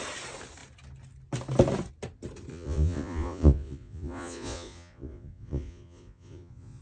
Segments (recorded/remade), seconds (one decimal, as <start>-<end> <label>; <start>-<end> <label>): 0.0-2.5 recorded; 2.5-6.8 remade